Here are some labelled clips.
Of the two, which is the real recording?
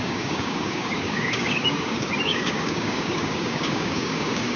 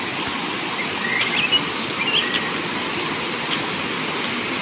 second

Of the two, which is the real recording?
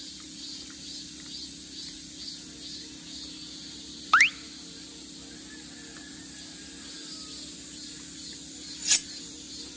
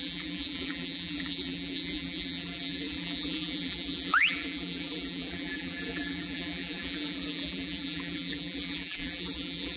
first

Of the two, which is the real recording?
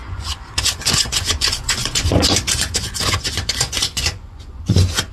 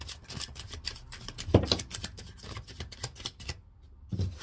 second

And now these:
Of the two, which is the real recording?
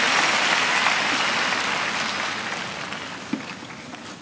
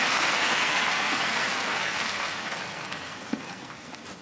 first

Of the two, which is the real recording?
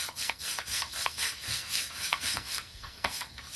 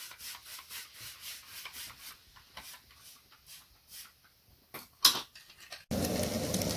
second